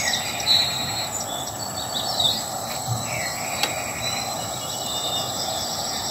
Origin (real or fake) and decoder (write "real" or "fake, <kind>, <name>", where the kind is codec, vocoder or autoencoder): real